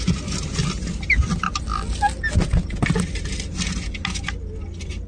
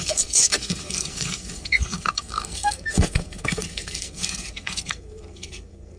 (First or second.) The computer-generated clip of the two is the second